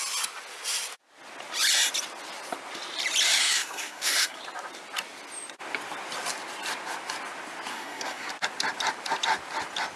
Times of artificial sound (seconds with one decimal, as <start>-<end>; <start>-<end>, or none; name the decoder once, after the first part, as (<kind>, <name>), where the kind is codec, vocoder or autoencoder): 3.4-4.4 (codec, SNAC); 7.7-8.3